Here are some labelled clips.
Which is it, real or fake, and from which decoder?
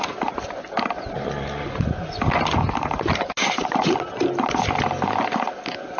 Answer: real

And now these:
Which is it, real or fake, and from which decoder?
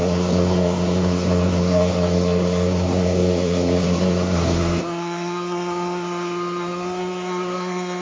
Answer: fake, codec, SNAC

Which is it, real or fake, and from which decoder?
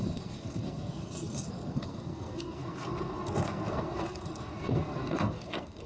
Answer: fake, codec, SNAC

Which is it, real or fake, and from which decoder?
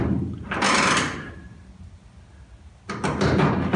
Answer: real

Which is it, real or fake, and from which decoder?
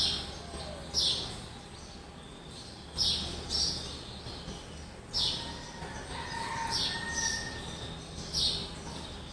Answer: real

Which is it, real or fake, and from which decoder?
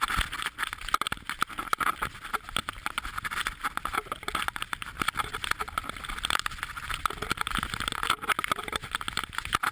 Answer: real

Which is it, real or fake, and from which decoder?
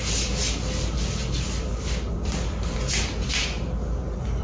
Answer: real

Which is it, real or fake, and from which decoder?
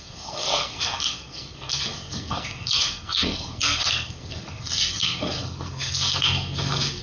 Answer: fake, codec, SNAC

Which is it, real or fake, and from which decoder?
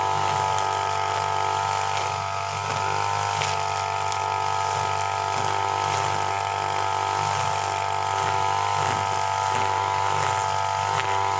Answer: real